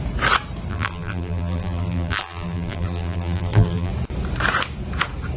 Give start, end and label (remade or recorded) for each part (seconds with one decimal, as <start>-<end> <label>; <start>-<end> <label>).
0.0-0.7 recorded; 0.7-3.9 remade; 3.9-5.4 recorded